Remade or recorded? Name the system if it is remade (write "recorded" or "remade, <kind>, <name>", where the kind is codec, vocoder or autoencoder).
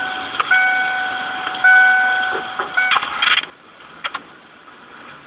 recorded